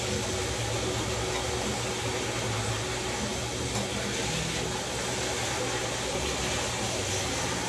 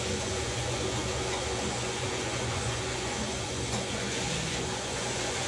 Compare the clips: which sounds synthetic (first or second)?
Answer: second